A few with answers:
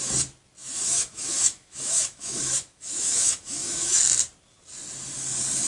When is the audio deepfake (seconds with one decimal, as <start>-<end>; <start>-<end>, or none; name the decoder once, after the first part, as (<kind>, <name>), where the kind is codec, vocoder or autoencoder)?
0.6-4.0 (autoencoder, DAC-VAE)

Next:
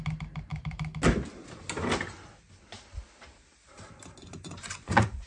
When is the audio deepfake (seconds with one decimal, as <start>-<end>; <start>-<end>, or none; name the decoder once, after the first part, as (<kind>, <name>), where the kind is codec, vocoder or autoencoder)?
4.2-5.3 (vocoder, Vocos)

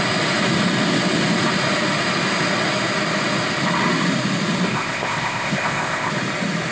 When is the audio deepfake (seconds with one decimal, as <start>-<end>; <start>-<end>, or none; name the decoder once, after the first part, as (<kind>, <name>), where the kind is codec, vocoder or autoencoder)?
4.7-6.1 (codec, ZipCodec)

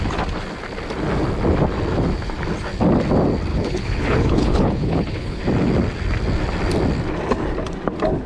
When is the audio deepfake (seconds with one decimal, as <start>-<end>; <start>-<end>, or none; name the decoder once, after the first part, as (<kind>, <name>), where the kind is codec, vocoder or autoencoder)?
3.5-5.4 (codec, HILCodec)

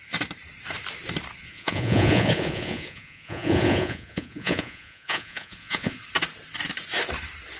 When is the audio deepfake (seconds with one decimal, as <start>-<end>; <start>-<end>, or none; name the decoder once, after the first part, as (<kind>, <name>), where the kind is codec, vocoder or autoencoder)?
1.4-6.0 (vocoder, Vocos)